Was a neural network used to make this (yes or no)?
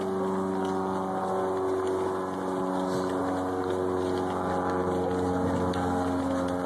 no